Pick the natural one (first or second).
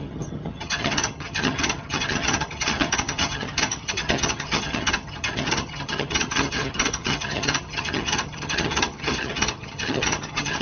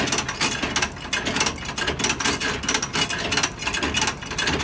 second